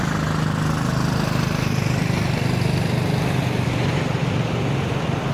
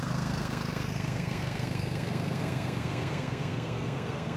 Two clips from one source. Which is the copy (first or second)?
second